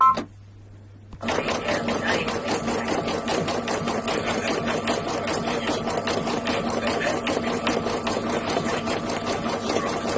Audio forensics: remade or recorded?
recorded